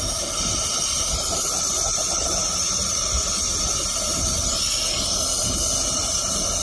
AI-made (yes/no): no